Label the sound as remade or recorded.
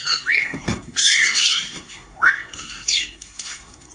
remade